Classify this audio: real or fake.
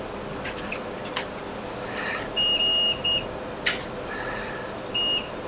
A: real